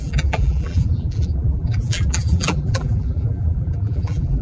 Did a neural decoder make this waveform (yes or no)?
yes